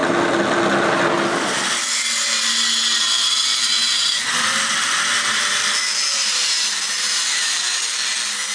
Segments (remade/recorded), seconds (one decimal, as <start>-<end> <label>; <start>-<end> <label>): 0.0-6.2 recorded; 6.2-7.6 remade; 7.6-8.5 recorded